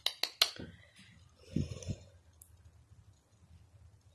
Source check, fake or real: real